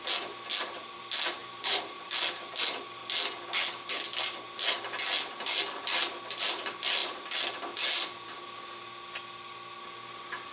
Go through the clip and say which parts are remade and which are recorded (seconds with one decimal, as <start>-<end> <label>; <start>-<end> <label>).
0.0-1.4 recorded; 1.4-2.0 remade; 2.0-10.5 recorded